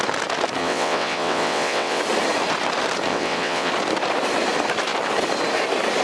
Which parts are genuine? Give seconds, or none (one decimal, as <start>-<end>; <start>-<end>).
0.0-0.6; 2.0-3.1; 3.7-6.0